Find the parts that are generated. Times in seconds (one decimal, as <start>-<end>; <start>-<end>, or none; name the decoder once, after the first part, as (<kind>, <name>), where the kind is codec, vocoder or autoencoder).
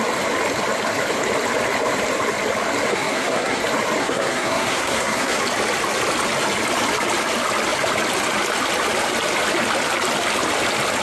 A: 2.9-3.6 (codec, SNAC); 4.0-5.4